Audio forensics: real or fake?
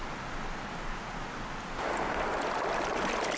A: real